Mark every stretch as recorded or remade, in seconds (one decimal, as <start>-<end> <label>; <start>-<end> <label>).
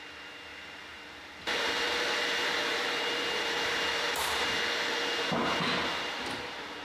0.0-0.5 recorded; 0.5-4.6 remade; 4.6-6.8 recorded